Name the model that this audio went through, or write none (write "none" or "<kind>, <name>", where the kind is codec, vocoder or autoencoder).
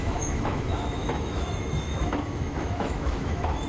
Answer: autoencoder, DAC-VAE